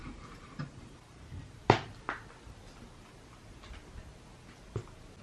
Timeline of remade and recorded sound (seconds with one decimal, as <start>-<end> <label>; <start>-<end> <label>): 0.0-1.6 remade; 1.6-5.2 recorded